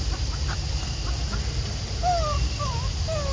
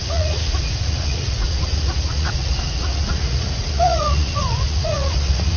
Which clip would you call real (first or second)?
first